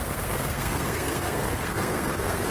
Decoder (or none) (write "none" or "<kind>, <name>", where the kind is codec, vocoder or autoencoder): codec, SNAC